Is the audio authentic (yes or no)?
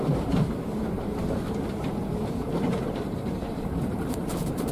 no